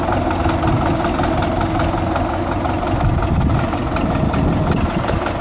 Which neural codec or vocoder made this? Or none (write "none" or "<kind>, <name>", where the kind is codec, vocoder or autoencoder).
none